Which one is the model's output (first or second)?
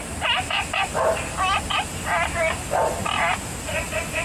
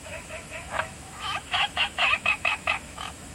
second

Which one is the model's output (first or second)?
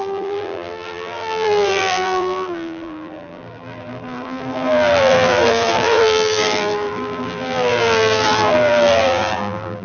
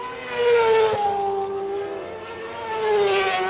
first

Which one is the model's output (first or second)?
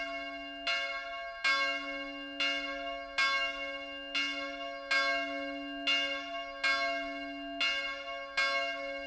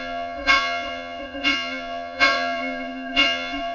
second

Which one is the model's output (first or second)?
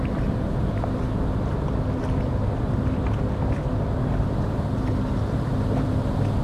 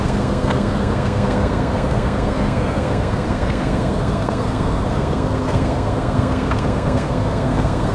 second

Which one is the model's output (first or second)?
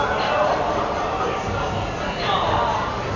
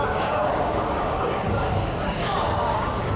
second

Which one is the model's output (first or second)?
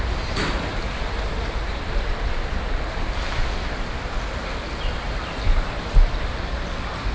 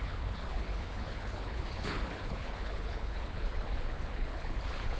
second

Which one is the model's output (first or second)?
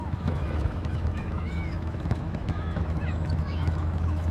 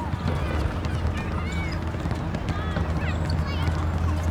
first